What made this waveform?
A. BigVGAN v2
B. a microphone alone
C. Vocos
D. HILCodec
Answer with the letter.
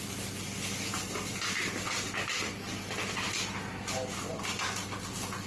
B